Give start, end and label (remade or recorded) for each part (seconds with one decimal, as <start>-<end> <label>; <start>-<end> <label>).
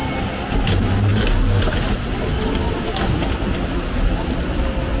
0.0-5.0 recorded